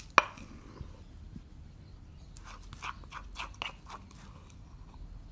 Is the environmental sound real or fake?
real